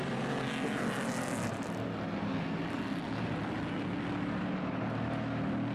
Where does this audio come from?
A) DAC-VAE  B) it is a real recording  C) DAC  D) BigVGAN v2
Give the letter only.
B